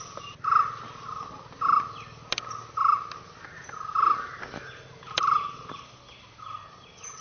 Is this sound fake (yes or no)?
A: no